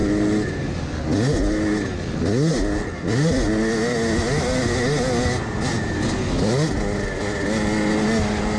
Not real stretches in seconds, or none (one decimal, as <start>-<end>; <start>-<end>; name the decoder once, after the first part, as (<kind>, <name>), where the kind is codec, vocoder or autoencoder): none